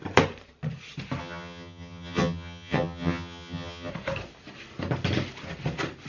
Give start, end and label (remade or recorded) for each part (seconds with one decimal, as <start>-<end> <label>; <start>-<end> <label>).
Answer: 0.0-1.2 recorded; 1.2-3.9 remade; 3.9-6.1 recorded